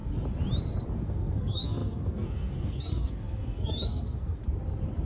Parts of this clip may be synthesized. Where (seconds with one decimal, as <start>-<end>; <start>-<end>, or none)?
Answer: 1.0-4.4